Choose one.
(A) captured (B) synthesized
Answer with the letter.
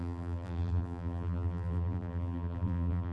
B